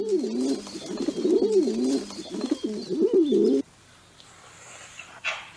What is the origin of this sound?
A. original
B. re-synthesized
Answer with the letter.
A